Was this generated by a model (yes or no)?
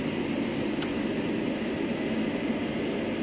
no